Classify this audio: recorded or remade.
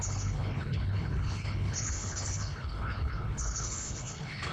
remade